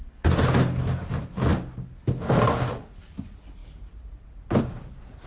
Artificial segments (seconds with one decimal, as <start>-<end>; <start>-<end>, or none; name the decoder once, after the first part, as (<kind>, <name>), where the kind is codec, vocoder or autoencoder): none